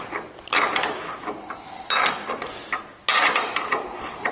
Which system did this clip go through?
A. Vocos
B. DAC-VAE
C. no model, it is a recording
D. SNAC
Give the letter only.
C